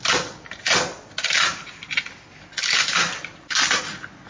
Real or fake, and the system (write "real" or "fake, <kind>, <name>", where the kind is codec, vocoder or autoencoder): real